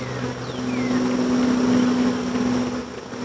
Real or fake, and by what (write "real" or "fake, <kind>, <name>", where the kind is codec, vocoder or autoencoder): real